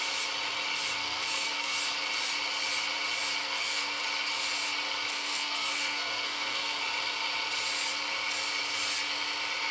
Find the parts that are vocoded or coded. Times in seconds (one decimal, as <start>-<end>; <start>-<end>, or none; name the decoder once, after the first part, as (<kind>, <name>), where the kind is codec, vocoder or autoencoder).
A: 1.0-1.8 (codec, SNAC); 3.4-4.0; 5.1-6.8